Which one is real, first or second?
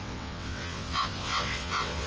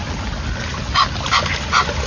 second